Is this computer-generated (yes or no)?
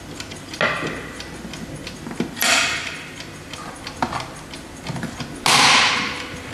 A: no